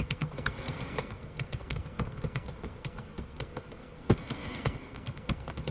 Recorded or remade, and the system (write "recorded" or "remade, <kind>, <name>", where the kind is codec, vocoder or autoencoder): remade, codec, SNAC